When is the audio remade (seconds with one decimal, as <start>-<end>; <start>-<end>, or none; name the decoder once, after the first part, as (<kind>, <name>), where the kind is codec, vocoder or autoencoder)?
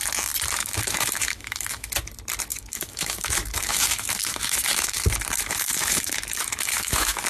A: 0.6-1.9 (autoencoder, DAC-VAE); 2.5-7.3